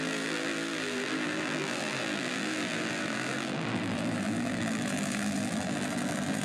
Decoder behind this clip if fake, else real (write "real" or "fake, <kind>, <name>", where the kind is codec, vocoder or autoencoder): fake, vocoder, BigVGAN v2